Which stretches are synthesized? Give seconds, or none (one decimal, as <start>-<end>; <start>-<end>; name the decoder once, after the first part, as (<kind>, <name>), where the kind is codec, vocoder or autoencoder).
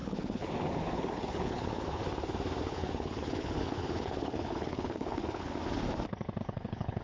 0.0-2.0 (codec, HILCodec); 2.6-5.5; 6.4-7.0